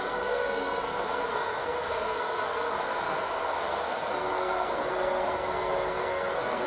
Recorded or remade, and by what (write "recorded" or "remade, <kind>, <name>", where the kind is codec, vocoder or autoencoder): remade, codec, SNAC